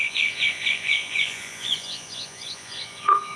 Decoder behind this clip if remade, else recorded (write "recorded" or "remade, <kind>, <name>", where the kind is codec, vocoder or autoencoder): remade, vocoder, Vocos